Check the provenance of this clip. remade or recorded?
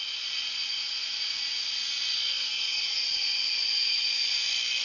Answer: recorded